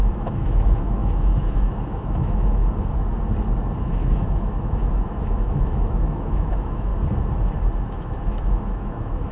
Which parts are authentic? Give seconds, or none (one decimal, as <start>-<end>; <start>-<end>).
2.6-3.8; 6.9-7.8